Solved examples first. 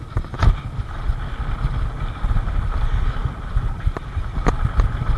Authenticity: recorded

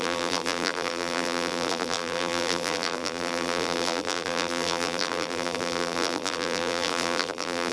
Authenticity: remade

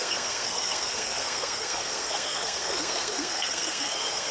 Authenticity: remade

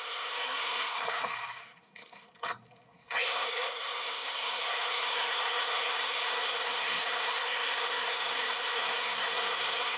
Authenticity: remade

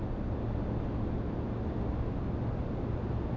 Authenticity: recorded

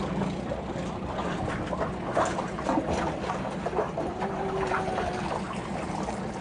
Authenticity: recorded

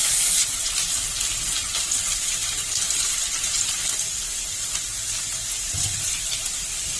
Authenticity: recorded